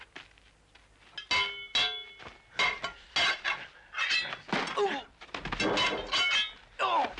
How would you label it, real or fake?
real